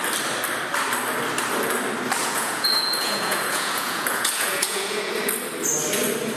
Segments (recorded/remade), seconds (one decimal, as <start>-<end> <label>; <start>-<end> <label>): 0.0-2.2 recorded; 2.2-5.1 remade; 5.1-6.4 recorded